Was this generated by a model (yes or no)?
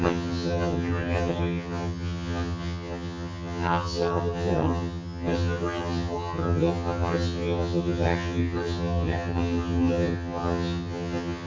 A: yes